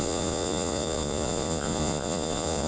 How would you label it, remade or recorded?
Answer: remade